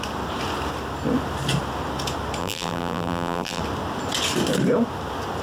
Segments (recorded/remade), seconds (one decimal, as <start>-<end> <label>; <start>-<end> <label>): 0.0-2.4 recorded; 2.4-3.6 remade; 3.6-5.4 recorded